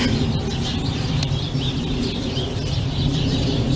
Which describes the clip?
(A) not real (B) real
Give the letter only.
B